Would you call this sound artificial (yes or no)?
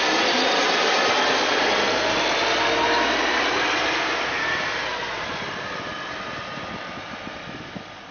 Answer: no